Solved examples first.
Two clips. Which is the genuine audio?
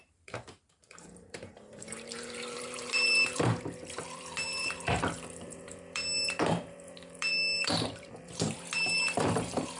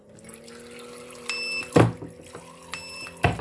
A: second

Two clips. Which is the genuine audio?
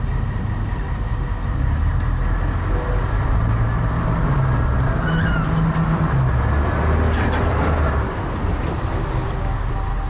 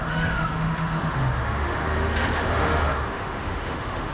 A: first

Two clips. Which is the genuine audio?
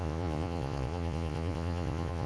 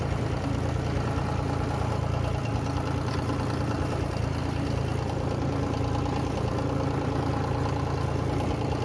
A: second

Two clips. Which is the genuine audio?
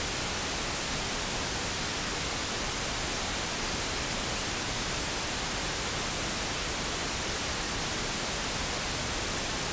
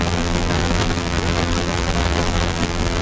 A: first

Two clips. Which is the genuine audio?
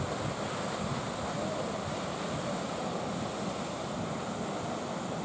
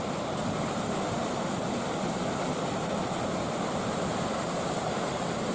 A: first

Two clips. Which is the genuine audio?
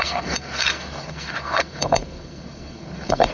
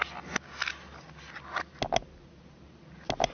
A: second